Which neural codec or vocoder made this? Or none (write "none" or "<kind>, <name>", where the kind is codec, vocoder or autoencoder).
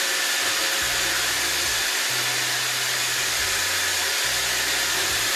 none